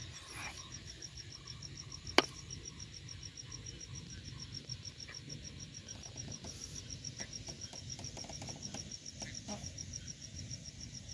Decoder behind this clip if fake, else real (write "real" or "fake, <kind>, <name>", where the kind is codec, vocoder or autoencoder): real